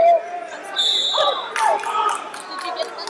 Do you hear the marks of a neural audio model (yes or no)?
no